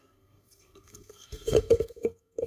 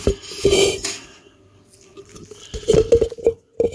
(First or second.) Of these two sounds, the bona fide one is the second